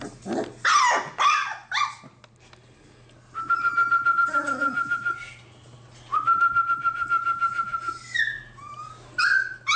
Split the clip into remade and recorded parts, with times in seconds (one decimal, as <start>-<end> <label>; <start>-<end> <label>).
0.0-9.8 recorded